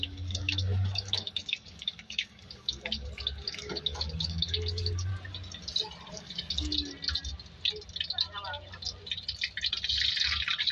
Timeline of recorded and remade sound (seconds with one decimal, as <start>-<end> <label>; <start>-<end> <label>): 0.0-5.1 remade; 5.1-6.1 recorded; 6.1-6.7 remade; 6.7-10.7 recorded